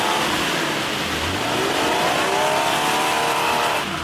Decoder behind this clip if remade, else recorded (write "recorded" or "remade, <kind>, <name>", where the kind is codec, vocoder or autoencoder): recorded